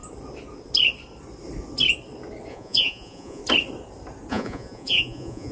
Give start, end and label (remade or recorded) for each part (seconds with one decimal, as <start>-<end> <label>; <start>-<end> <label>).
0.0-2.5 recorded; 2.5-3.4 remade; 3.4-4.3 recorded; 4.3-5.5 remade